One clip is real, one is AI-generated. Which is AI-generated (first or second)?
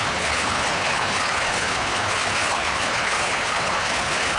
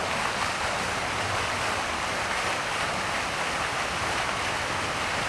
first